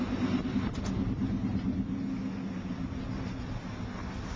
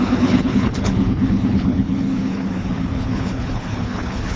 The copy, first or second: second